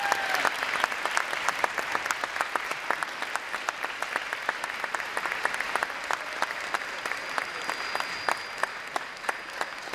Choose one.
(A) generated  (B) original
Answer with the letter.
B